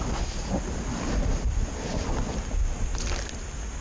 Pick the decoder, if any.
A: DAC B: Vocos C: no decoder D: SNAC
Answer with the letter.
C